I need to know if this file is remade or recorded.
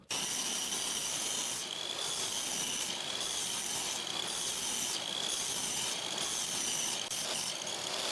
recorded